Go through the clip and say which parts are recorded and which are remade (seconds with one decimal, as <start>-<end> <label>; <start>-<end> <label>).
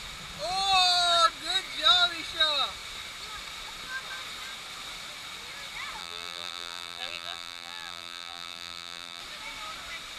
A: 0.0-6.0 recorded; 6.0-9.2 remade; 9.2-10.2 recorded